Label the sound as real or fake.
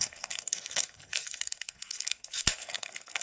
fake